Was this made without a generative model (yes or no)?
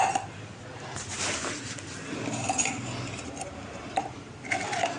yes